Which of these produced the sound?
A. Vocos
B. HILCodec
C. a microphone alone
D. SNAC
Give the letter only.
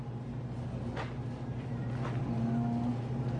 C